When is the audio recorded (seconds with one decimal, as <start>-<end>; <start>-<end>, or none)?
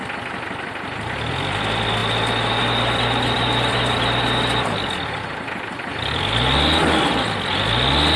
0.0-8.2